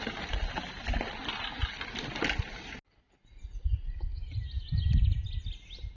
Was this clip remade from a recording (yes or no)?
no